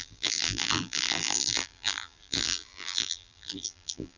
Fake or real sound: fake